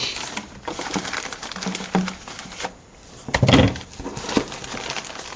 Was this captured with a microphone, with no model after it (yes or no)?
yes